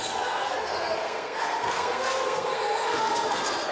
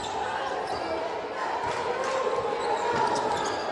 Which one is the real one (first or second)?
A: second